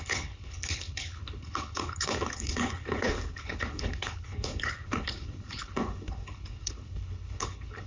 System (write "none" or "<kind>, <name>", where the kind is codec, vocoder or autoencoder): codec, HILCodec